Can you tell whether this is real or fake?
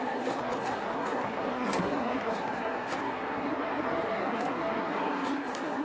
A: fake